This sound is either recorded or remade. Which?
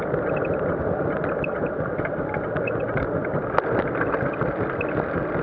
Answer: recorded